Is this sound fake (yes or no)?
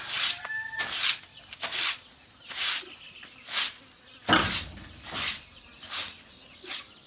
no